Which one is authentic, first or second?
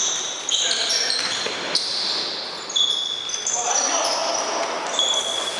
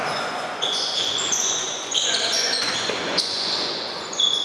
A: first